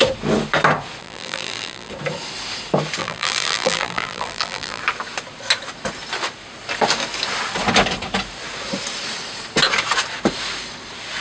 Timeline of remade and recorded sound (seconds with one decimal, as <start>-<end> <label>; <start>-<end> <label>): 0.0-1.0 recorded; 1.0-1.9 remade; 1.9-3.0 recorded; 3.0-4.8 remade; 4.8-11.2 recorded